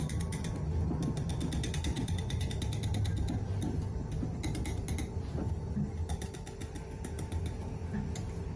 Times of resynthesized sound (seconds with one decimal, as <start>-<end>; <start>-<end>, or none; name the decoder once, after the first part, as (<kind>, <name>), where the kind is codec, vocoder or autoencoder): 1.9-2.5 (vocoder, Vocos)